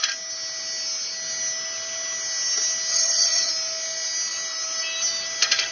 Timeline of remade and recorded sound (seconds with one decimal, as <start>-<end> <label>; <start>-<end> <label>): 0.0-2.9 recorded; 2.9-3.5 remade; 3.5-5.7 recorded